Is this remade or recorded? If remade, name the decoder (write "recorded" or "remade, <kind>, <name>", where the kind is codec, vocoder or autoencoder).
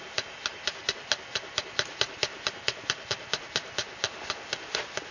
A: recorded